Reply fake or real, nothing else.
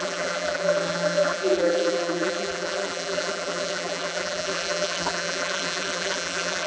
fake